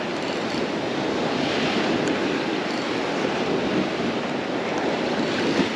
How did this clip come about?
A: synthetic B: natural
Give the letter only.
B